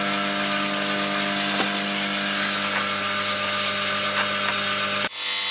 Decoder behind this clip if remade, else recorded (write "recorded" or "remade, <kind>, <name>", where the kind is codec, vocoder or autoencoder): recorded